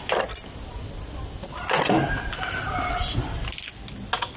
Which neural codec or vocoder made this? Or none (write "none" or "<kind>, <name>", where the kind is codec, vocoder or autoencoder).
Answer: none